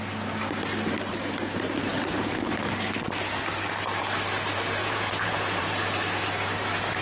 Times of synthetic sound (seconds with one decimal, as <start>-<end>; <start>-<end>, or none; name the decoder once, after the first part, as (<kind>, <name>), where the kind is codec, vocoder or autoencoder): 4.8-5.7 (vocoder, Vocos)